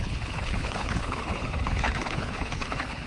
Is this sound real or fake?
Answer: fake